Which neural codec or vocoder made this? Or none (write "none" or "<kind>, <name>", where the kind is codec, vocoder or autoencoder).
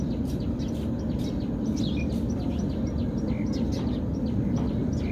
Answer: none